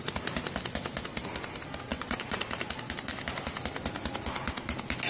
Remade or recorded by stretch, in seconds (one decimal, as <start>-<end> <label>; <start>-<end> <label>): 0.0-1.9 recorded; 1.9-2.4 remade; 2.4-5.1 recorded